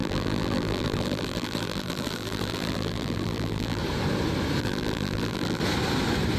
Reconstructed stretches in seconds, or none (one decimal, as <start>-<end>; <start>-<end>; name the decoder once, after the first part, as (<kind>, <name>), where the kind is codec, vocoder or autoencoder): 0.0-3.8 (vocoder, BigVGAN v2); 4.6-5.6